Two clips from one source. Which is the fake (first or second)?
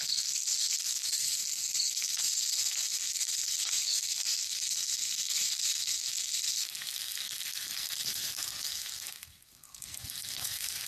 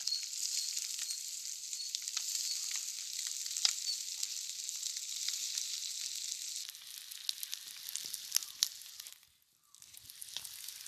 first